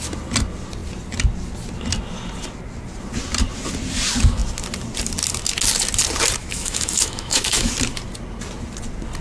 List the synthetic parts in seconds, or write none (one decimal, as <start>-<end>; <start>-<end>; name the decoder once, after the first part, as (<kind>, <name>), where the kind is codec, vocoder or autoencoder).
6.4-7.7 (autoencoder, DAC-VAE)